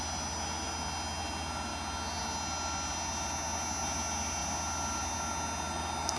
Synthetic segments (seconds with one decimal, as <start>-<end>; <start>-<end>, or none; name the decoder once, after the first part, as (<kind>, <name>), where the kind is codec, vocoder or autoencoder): none